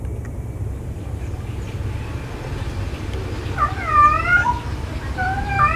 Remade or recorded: recorded